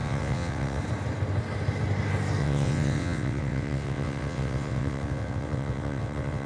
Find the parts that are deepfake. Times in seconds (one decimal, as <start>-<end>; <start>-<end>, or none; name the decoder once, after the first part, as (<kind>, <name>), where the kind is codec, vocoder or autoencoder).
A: 0.0-0.8 (vocoder, WaveNeXt); 2.4-6.5